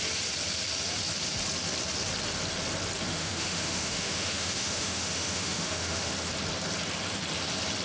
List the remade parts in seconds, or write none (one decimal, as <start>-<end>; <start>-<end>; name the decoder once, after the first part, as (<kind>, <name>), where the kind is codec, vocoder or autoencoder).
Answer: 3.1-6.1 (autoencoder, DAC-VAE)